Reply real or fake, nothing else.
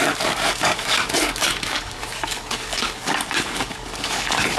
fake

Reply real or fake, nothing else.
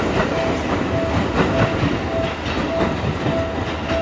real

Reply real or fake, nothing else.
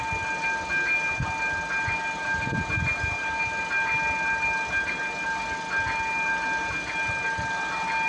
real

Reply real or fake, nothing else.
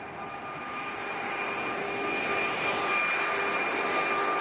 real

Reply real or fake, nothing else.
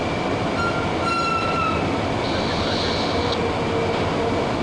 real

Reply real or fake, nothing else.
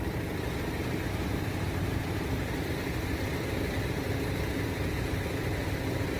fake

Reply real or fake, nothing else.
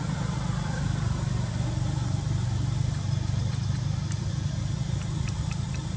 real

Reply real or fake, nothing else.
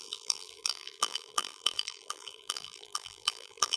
fake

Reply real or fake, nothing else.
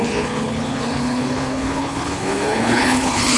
fake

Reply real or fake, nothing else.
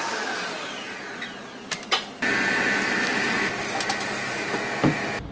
real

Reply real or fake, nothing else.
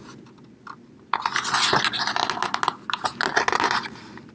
real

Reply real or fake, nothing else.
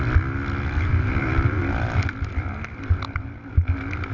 real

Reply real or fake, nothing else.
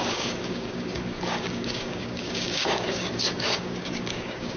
fake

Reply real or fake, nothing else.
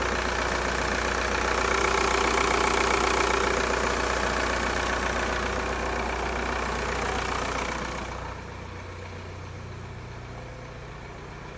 real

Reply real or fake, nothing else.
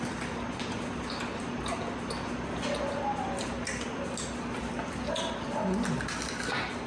real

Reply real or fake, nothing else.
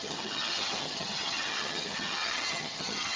fake